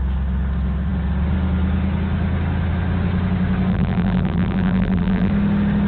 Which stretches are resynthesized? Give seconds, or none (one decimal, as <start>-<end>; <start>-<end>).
3.7-5.3

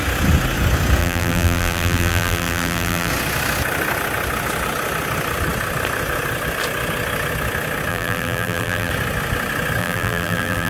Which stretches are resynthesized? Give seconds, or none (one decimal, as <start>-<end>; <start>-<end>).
1.0-3.1; 7.9-8.9; 9.8-10.7

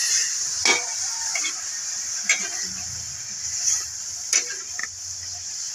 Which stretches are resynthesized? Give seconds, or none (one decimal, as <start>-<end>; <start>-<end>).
4.8-5.7

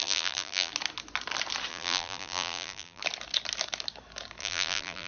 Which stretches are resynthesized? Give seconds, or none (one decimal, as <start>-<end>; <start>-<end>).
0.0-0.7; 1.7-3.0; 4.4-5.1

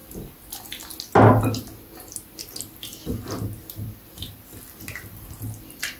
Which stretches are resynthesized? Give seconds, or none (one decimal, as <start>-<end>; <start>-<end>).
none

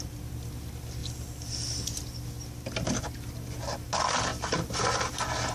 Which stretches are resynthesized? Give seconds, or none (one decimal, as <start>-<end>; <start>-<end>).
1.0-2.0; 4.3-5.1